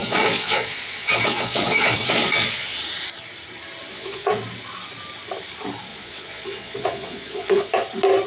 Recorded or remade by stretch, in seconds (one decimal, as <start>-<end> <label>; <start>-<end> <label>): 0.0-2.8 remade; 2.8-3.9 recorded; 3.9-4.4 remade; 4.4-5.9 recorded; 5.9-7.7 remade; 7.7-8.3 recorded